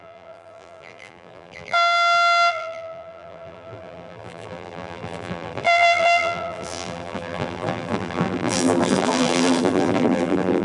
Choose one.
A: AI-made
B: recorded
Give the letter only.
A